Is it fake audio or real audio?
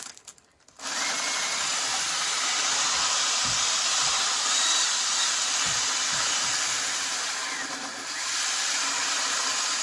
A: real